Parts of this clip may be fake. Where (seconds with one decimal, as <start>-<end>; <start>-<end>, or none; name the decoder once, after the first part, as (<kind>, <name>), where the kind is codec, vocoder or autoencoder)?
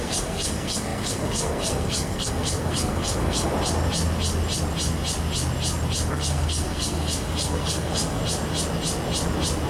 0.0-3.5 (codec, SNAC); 6.1-8.2